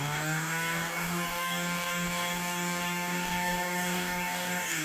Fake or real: fake